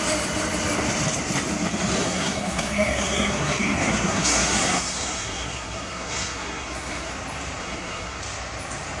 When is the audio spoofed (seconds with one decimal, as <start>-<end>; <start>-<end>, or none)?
2.0-7.1; 7.6-8.2